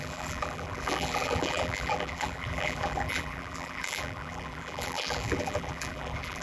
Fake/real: fake